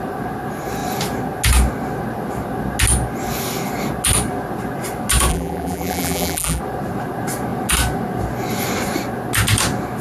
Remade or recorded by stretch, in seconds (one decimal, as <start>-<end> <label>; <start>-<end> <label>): 0.0-5.3 recorded; 5.3-6.6 remade; 6.6-10.0 recorded